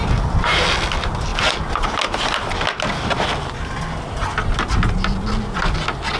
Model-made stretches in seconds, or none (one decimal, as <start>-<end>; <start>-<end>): none